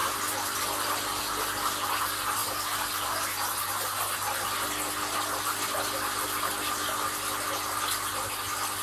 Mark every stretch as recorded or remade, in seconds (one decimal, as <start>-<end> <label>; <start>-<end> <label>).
0.0-8.8 recorded